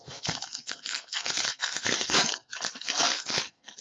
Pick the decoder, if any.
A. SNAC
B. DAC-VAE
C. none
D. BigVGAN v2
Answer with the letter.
A